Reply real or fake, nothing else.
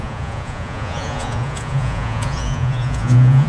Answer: fake